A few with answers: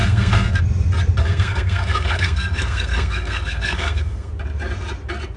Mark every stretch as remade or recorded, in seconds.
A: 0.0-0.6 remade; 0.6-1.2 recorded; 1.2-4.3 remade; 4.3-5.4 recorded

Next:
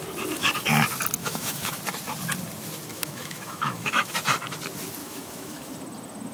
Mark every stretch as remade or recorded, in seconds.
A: 0.0-1.2 recorded; 1.2-1.8 remade; 1.8-2.9 recorded; 2.9-4.2 remade; 4.2-5.0 recorded; 5.0-5.7 remade; 5.7-6.3 recorded

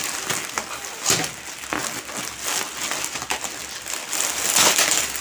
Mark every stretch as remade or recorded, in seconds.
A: 0.0-5.2 recorded